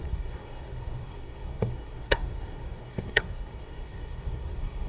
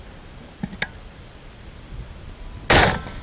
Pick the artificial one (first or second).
first